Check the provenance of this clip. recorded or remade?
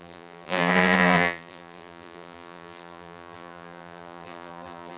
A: remade